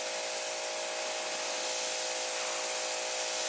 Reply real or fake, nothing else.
real